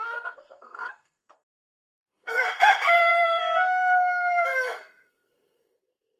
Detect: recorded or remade remade